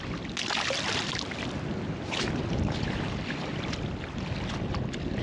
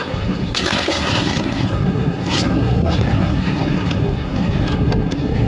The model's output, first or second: second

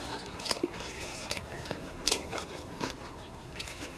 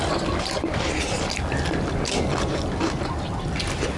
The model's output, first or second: first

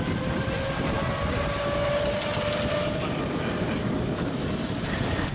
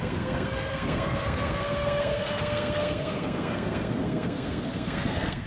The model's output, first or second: second